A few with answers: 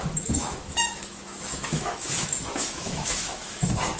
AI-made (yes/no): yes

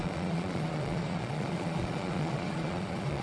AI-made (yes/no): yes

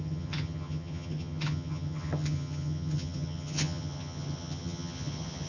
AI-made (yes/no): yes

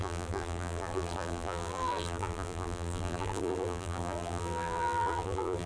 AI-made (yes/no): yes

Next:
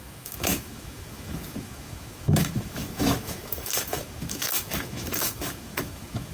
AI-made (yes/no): yes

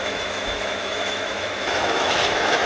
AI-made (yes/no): yes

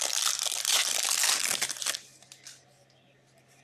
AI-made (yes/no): yes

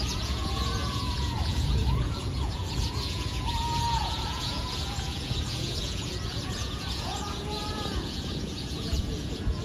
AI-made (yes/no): yes